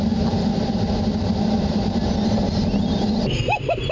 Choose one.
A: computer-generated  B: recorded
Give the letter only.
B